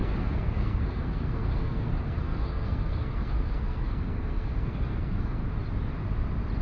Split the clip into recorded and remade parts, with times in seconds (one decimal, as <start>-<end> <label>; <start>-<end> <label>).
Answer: 0.0-5.4 remade; 5.4-6.6 recorded